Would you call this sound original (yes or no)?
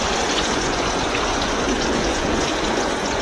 no